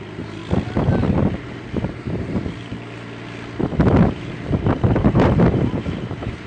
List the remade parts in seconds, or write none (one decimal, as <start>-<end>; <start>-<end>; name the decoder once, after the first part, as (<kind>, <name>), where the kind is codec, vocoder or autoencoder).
0.0-0.4 (vocoder, BigVGAN v2); 1.4-2.7; 4.0-6.5